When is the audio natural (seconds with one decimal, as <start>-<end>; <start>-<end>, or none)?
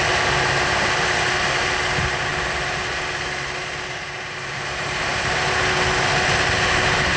0.0-7.2